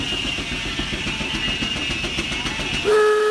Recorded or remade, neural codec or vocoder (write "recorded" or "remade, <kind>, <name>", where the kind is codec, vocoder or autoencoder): recorded